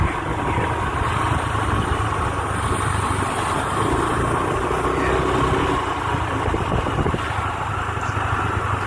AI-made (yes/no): no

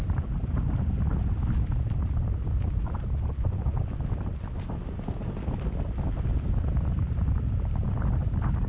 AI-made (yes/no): no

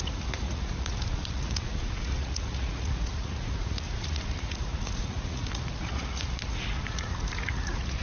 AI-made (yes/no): yes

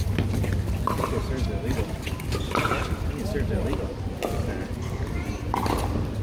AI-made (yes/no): no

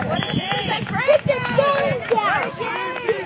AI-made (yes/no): yes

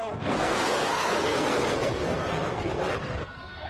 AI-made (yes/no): yes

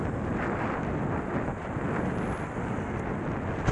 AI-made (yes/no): no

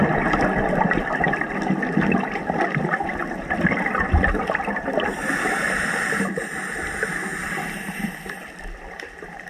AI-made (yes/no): no